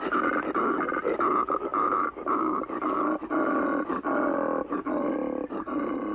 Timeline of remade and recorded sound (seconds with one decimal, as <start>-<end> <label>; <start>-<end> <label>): 0.0-6.1 recorded